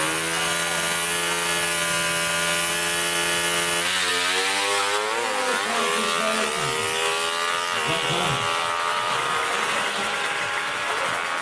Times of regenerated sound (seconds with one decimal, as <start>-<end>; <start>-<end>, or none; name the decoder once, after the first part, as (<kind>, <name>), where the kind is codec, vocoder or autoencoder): 8.9-11.0 (vocoder, BigVGAN v2)

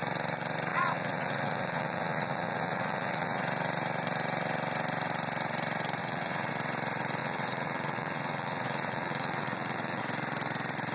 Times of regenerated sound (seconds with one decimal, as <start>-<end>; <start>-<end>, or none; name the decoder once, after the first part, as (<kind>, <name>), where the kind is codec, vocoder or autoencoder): 0.7-3.4 (vocoder, Vocos); 6.0-6.5; 7.2-10.0

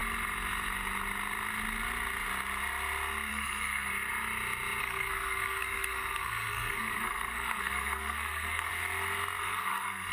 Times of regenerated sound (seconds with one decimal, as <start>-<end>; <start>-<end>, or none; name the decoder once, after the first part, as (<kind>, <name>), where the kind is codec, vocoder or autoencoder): 3.3-3.9 (codec, SNAC); 4.8-8.7; 9.4-10.1

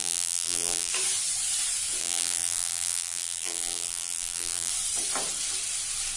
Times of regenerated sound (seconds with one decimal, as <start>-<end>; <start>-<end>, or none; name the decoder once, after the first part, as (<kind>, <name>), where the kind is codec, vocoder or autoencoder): 0.0-0.9 (vocoder, BigVGAN v2); 2.0-4.7

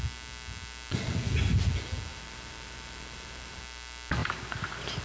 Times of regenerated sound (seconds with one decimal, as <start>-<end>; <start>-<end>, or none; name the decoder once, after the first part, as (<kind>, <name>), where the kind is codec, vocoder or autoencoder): 2.1-3.6 (vocoder, BigVGAN v2); 4.2-5.0

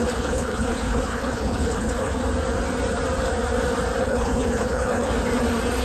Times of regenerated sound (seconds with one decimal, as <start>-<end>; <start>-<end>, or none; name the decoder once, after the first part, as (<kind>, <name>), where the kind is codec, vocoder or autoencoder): 0.0-2.2 (codec, HILCodec); 4.0-5.1